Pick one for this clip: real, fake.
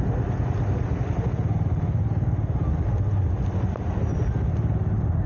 real